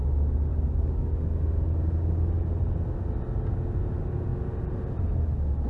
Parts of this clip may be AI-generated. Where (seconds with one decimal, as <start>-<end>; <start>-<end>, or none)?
0.5-1.0

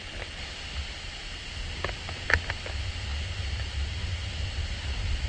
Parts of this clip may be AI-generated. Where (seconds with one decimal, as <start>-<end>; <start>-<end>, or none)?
none

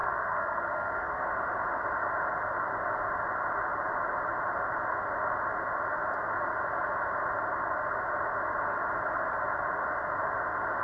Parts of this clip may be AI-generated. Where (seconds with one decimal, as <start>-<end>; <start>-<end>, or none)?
0.0-1.2

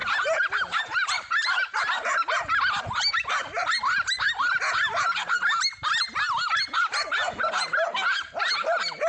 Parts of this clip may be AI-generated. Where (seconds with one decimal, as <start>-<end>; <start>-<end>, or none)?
0.0-1.8

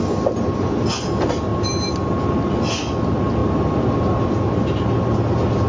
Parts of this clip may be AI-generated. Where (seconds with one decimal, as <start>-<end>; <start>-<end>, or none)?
none

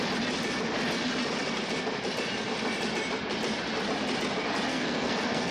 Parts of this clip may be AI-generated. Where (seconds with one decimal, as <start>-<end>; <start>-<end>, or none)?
4.7-5.5

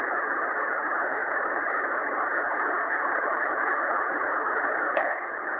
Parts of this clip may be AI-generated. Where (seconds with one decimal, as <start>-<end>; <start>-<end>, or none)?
0.0-5.6